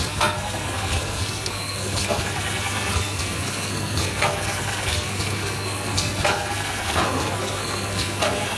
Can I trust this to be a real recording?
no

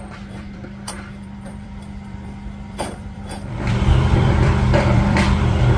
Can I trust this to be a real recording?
no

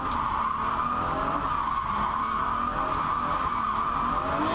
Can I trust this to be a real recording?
yes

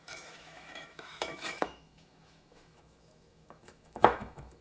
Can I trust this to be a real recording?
no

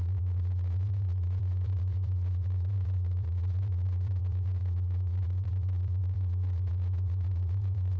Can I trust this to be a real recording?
no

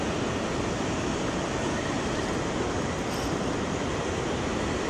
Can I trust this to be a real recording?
no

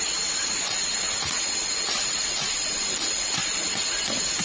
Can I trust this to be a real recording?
yes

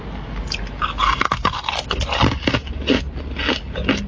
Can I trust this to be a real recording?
yes